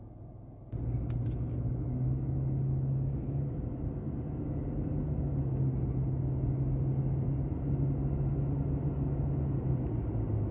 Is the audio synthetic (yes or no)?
no